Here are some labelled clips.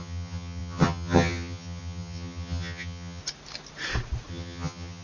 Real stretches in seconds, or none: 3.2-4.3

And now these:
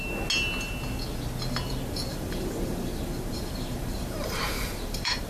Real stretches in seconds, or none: 0.0-2.1

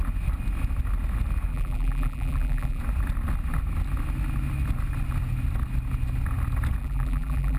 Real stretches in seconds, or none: 0.0-1.5; 2.8-6.8

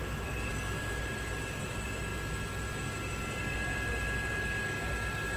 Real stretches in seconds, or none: 0.0-0.5; 1.1-5.4

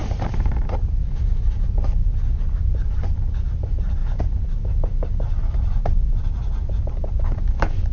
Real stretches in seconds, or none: 4.0-5.5

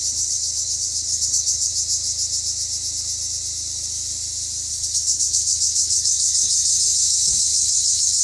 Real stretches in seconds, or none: 1.7-4.7; 6.5-7.4

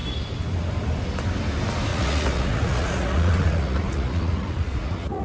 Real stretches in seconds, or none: 0.0-1.9

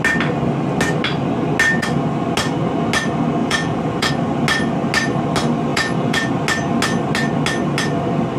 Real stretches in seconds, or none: 0.0-3.4; 4.1-5.7; 6.3-8.4